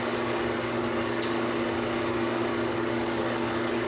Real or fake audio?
fake